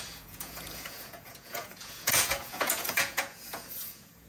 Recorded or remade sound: remade